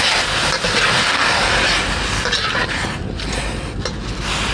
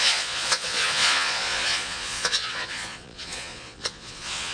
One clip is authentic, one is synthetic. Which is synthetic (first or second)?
second